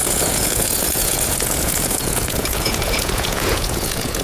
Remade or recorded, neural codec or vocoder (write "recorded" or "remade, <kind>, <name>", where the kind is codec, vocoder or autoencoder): remade, vocoder, Vocos